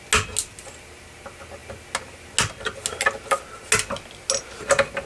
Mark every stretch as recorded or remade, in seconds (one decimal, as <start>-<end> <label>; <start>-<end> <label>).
0.0-5.1 recorded